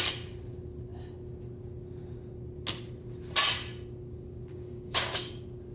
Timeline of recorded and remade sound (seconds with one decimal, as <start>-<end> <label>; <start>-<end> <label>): 0.0-4.5 recorded; 4.5-5.3 remade; 5.3-5.7 recorded